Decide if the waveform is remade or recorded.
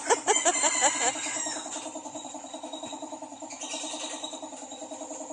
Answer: recorded